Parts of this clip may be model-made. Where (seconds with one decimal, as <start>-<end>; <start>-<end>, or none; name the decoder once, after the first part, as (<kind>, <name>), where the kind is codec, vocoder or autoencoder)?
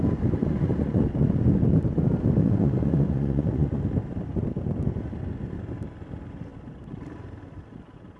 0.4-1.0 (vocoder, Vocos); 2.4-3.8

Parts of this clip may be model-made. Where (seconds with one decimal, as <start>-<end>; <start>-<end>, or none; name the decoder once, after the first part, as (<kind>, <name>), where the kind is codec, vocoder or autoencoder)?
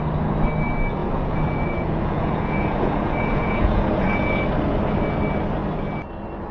1.0-4.4 (vocoder, Vocos)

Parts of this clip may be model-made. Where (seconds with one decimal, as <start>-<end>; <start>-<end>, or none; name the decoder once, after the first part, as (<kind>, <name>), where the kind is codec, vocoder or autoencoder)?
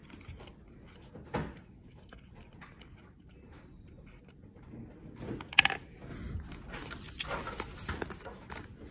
none